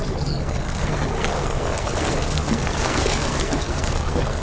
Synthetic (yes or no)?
yes